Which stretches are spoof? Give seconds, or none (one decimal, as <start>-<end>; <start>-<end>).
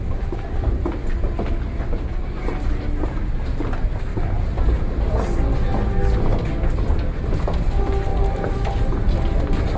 4.1-4.7; 8.1-8.8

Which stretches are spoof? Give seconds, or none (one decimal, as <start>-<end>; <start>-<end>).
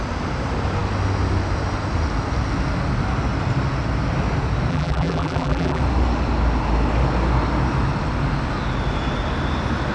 4.7-5.8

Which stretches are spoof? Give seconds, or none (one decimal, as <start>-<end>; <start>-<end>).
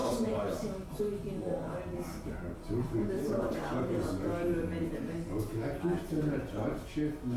none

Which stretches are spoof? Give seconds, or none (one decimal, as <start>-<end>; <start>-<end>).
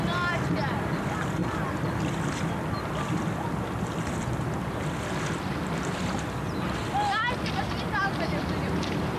none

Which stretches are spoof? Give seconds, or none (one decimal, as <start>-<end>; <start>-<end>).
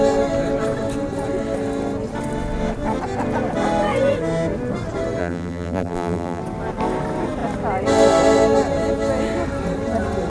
5.2-6.4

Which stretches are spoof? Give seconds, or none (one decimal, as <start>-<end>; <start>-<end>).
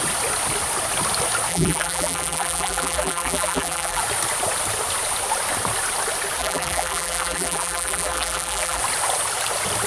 1.5-4.0; 6.4-8.8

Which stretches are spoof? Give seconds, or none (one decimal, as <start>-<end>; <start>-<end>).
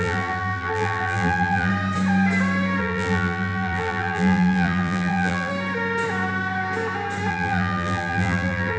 0.0-1.7; 2.8-5.5; 7.3-8.8